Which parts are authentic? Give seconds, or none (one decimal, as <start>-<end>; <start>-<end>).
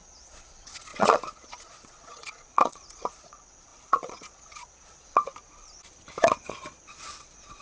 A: 5.3-6.2